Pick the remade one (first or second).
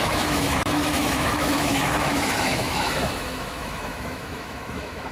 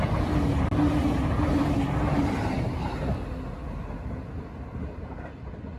first